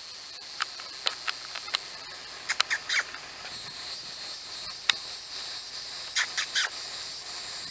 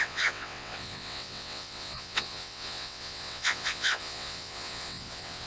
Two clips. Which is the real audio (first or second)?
first